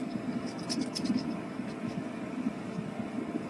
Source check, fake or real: fake